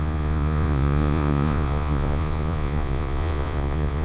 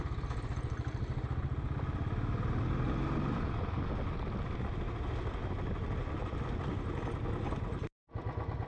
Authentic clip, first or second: second